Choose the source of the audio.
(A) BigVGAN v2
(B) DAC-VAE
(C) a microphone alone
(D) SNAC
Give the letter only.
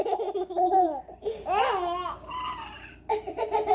C